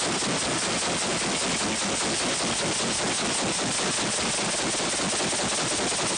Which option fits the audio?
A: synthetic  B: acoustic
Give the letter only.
B